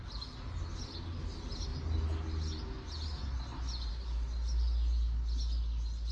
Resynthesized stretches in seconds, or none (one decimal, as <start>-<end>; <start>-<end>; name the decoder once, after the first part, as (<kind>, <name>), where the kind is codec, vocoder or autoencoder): none